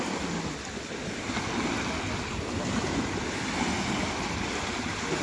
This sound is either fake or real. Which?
real